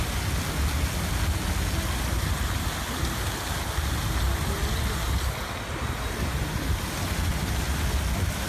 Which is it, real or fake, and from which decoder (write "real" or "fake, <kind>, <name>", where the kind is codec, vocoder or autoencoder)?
real